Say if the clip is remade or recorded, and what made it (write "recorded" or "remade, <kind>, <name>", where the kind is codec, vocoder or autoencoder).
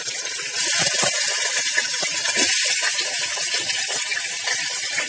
remade, vocoder, BigVGAN v2